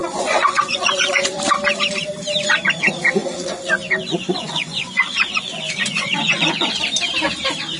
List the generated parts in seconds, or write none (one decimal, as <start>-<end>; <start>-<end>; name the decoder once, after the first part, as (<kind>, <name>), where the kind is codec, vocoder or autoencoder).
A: 0.0-1.3 (vocoder, Vocos); 3.2-6.9